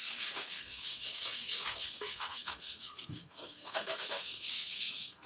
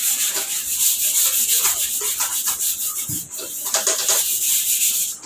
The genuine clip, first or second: second